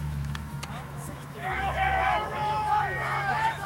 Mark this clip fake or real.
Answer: fake